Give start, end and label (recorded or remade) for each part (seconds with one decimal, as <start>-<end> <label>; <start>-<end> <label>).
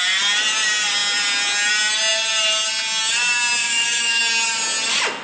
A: 0.0-3.6 recorded; 3.6-4.2 remade; 4.2-5.2 recorded